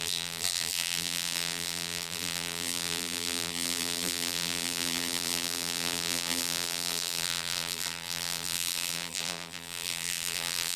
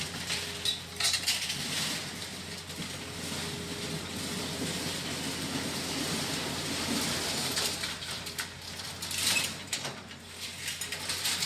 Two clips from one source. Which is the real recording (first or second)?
second